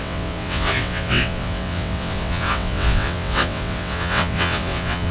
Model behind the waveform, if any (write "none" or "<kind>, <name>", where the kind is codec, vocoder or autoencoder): vocoder, WaveNeXt